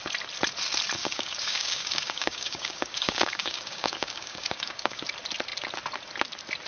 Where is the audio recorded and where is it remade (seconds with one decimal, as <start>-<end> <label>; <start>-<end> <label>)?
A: 0.0-1.0 recorded; 1.0-5.0 remade; 5.0-6.7 recorded